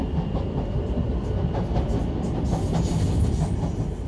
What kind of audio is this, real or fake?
real